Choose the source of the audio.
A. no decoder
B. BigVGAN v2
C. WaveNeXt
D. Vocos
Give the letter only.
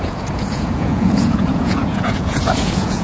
D